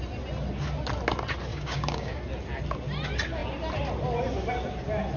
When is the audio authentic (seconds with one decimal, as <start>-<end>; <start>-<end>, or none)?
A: 0.0-1.5; 2.2-5.2